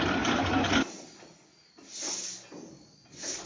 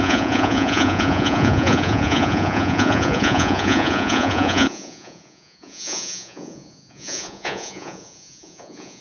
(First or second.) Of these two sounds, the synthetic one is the second